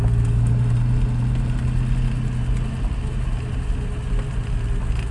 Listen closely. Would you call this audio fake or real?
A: real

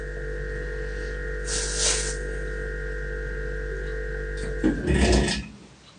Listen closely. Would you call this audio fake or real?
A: real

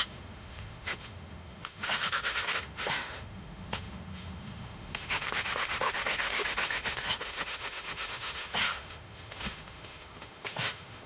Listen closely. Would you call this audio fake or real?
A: fake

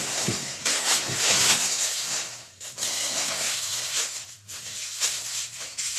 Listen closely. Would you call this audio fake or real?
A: fake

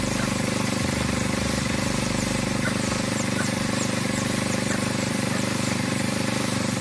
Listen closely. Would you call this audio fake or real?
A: fake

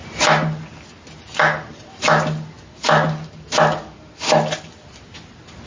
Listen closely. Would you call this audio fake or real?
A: real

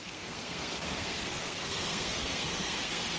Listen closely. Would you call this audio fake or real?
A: fake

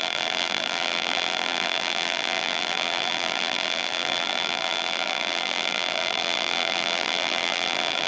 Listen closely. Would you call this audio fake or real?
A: fake